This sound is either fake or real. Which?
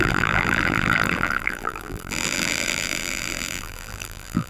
fake